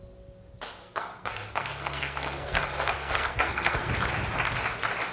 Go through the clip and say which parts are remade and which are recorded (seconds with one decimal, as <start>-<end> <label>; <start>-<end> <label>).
0.0-0.8 recorded; 0.8-3.9 remade; 3.9-5.1 recorded

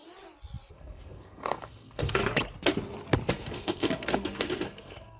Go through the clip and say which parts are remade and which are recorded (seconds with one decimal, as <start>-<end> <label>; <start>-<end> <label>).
0.0-0.7 recorded; 0.7-2.2 remade; 2.2-3.3 recorded; 3.3-5.2 remade

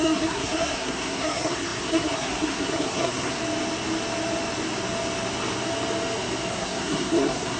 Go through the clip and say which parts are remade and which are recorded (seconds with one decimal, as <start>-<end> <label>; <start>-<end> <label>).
0.0-3.4 remade; 3.4-6.5 recorded; 6.5-7.6 remade

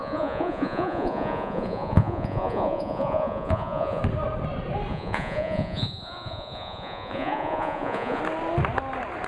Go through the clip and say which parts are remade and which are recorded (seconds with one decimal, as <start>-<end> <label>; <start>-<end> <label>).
0.0-4.0 remade; 4.0-4.9 recorded; 4.9-8.2 remade; 8.2-9.3 recorded

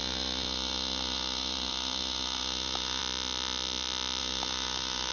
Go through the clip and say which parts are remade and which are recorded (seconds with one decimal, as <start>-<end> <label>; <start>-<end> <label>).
0.0-3.0 remade; 3.0-4.2 recorded; 4.2-5.1 remade

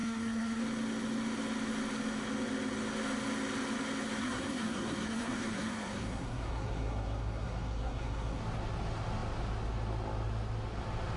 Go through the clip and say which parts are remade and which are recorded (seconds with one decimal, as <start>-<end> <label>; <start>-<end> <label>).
0.0-0.6 remade; 0.6-4.2 recorded; 4.2-8.4 remade; 8.4-11.2 recorded